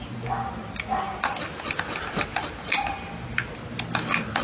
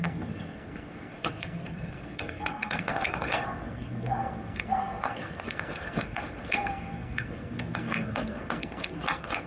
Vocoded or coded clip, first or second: second